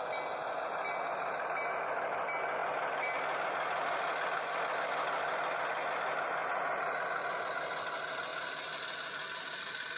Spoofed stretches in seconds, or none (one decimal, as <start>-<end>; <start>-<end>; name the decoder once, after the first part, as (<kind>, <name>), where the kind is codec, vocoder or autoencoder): none